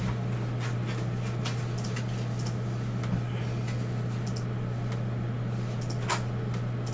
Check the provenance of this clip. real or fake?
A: real